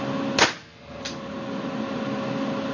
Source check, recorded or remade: recorded